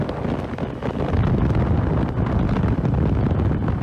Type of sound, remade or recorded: recorded